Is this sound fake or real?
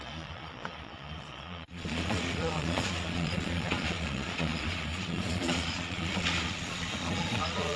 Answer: fake